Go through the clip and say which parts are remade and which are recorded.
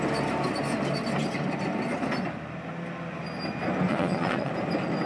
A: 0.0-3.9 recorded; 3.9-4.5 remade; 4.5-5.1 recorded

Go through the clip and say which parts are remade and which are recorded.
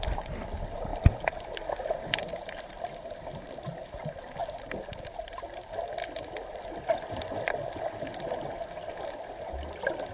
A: 0.0-10.1 recorded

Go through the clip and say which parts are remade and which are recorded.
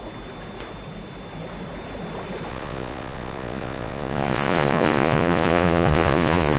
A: 0.0-2.5 recorded; 2.5-6.6 remade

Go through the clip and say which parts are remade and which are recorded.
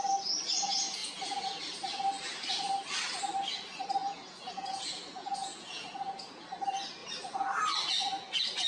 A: 0.0-1.0 recorded; 1.0-1.6 remade; 1.6-4.0 recorded; 4.0-6.4 remade; 6.4-8.7 recorded